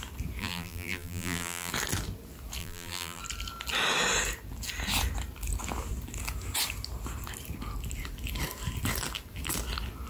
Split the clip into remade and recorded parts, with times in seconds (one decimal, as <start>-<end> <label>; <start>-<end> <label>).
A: 0.0-0.4 recorded; 0.4-1.7 remade; 1.7-2.6 recorded; 2.6-3.2 remade; 3.2-10.1 recorded